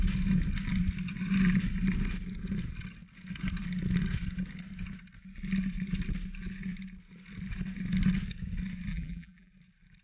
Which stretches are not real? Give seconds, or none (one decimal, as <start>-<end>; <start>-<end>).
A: 8.9-9.5